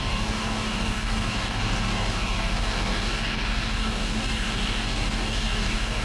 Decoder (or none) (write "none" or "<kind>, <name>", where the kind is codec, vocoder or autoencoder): codec, DAC